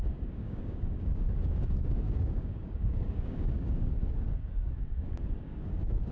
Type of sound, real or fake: fake